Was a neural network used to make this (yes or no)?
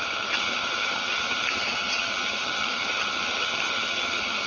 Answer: yes